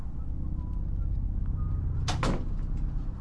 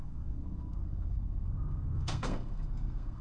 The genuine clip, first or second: first